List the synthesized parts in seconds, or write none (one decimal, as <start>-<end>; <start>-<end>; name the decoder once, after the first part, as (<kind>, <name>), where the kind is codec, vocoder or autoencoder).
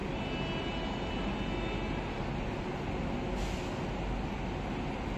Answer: none